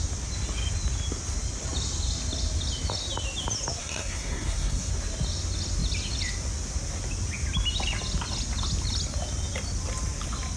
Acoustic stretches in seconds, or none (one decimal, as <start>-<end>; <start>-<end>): 0.0-3.8; 4.9-10.6